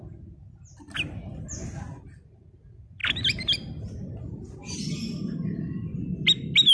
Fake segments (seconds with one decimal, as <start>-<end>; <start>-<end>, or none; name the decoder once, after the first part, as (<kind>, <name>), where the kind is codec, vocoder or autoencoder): none

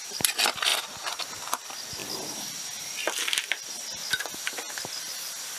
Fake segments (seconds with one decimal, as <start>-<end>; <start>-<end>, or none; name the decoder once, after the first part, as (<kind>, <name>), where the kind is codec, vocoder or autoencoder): none